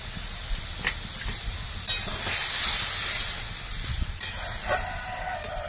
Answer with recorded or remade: recorded